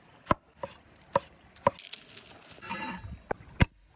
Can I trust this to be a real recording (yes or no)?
yes